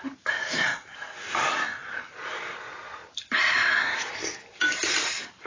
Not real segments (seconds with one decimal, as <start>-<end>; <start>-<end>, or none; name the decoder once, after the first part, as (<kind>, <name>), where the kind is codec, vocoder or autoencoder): 0.0-0.7 (vocoder, BigVGAN v2); 1.3-5.5